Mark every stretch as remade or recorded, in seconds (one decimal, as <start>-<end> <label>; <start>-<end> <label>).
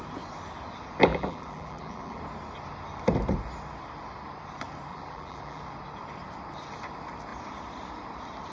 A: 0.0-1.1 recorded; 1.1-2.2 remade; 2.2-4.9 recorded; 4.9-5.6 remade; 5.6-8.5 recorded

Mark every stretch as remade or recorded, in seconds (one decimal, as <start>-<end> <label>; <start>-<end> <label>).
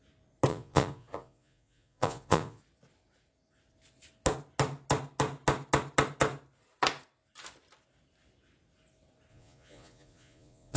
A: 0.0-0.5 recorded; 0.5-2.6 remade; 2.6-9.3 recorded; 9.3-10.8 remade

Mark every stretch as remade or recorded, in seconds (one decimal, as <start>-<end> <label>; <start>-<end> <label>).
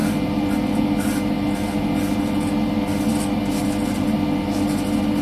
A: 0.0-5.2 recorded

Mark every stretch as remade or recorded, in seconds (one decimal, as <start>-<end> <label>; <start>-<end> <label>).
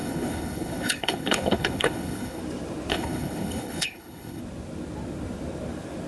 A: 0.0-2.4 remade; 2.4-2.9 recorded; 2.9-4.4 remade; 4.4-6.1 recorded